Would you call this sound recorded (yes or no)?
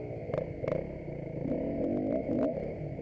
yes